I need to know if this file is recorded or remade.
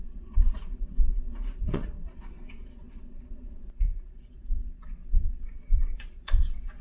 remade